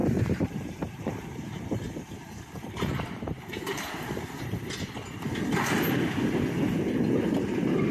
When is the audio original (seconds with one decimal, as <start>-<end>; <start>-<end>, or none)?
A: 4.7-7.9